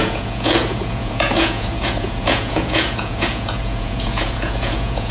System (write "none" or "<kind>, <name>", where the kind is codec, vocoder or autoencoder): vocoder, Vocos